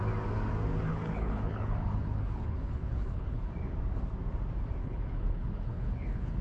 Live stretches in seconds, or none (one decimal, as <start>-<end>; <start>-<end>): 0.0-0.9; 3.5-4.8